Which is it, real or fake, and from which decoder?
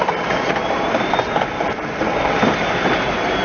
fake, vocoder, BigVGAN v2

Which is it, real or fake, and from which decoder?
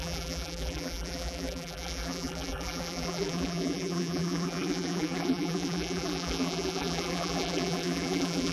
fake, vocoder, BigVGAN v2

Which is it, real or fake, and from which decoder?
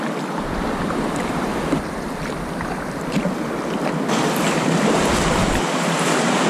fake, vocoder, BigVGAN v2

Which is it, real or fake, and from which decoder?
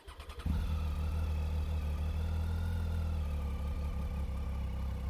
real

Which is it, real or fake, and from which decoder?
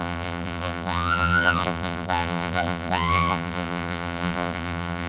fake, vocoder, BigVGAN v2